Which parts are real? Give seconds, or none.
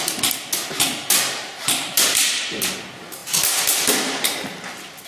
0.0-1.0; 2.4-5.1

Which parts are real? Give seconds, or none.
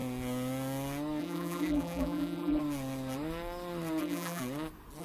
0.0-1.2; 2.6-4.0; 4.4-5.0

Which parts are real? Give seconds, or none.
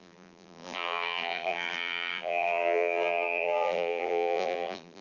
none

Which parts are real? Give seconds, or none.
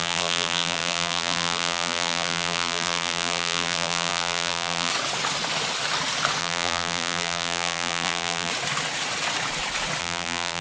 4.9-6.4; 8.5-10.0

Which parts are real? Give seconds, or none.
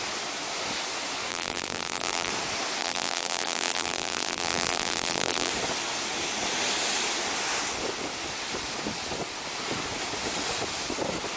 0.0-1.3; 2.3-2.8; 5.5-11.4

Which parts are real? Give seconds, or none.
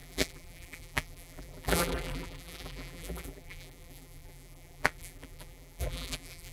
none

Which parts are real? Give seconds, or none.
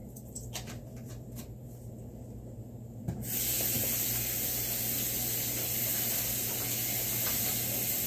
1.9-8.1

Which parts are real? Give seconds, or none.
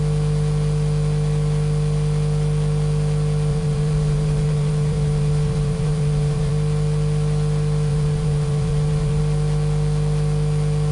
0.0-3.5; 6.5-7.9; 9.2-10.9